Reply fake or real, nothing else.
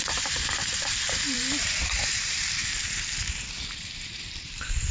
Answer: fake